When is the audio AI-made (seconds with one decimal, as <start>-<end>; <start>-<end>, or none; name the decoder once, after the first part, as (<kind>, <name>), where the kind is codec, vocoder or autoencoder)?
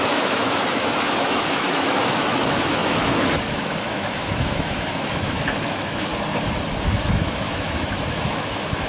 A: 0.0-6.1 (autoencoder, DAC-VAE); 6.8-8.9